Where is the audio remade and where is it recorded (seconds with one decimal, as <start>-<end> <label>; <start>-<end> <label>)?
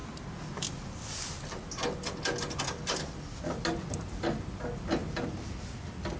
0.0-6.2 recorded